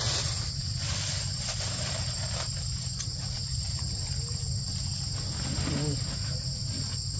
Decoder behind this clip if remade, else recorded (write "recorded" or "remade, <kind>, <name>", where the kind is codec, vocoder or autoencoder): recorded